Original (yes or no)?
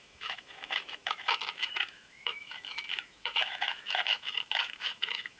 no